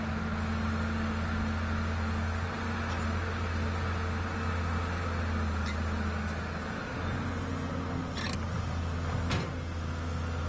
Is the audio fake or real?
real